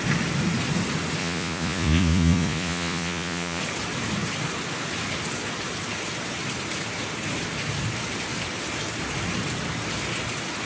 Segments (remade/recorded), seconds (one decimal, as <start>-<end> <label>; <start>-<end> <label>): 0.0-1.2 recorded; 1.2-3.6 remade; 3.6-10.7 recorded